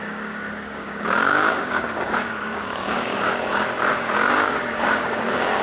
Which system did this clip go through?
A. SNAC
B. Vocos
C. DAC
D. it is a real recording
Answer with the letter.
C